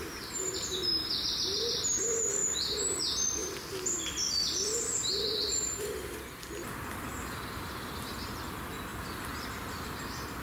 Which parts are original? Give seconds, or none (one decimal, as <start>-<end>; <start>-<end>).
2.4-2.9

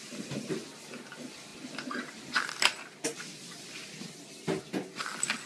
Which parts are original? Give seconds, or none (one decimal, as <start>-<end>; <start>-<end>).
0.0-5.5

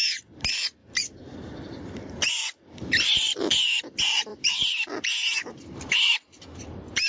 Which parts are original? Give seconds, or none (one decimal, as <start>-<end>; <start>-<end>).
0.0-0.8; 3.4-4.3; 6.1-7.1

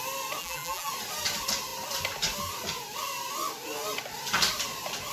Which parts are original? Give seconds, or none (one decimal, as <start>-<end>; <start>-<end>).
0.0-0.4; 0.9-5.1

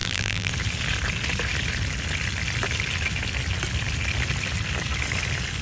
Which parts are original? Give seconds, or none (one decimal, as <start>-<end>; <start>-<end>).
0.5-5.6

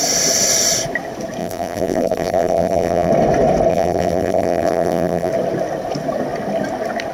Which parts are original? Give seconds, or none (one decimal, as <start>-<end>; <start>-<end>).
0.0-1.4; 3.1-3.7; 5.3-7.1